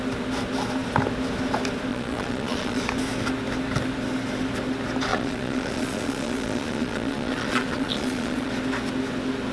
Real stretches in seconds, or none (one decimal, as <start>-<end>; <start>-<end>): 0.0-1.9; 2.8-5.1; 8.5-9.5